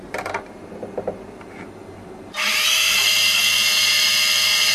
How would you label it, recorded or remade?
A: remade